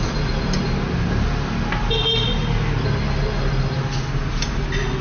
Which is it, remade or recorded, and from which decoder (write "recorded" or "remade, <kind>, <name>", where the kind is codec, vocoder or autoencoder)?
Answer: recorded